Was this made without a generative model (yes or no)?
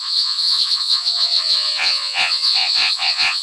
no